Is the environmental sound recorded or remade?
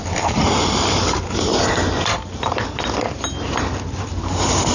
recorded